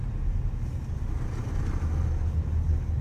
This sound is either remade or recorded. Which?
recorded